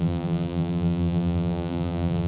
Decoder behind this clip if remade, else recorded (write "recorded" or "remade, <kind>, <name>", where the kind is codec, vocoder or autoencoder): remade, vocoder, BigVGAN v2